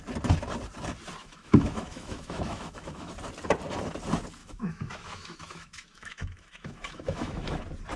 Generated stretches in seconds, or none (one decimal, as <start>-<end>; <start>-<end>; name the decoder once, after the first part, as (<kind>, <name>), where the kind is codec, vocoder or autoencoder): 1.2-3.1 (autoencoder, DAC-VAE); 4.4-7.6